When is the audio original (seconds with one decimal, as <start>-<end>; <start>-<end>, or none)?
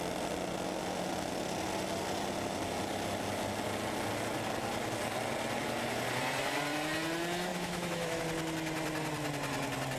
0.0-7.5; 8.2-10.0